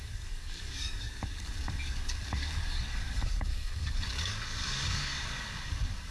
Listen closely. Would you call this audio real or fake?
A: fake